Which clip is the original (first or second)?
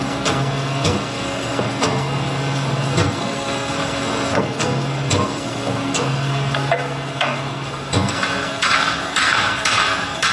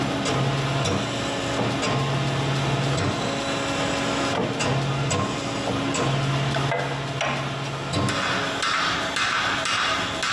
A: second